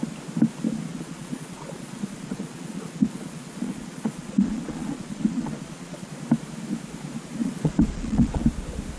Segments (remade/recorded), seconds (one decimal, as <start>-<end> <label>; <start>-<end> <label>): 0.0-0.9 recorded; 0.9-6.1 remade; 6.1-7.4 recorded; 7.4-8.4 remade; 8.4-9.0 recorded